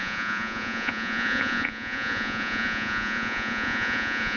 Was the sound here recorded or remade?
remade